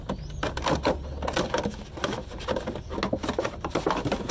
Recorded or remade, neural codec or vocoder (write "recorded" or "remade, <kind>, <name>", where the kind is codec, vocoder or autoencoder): recorded